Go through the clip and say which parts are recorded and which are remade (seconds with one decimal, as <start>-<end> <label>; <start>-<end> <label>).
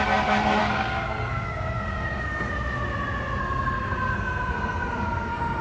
0.0-0.6 recorded; 0.6-2.5 remade; 2.5-3.4 recorded; 3.4-5.6 remade